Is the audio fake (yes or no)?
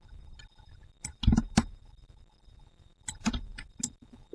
no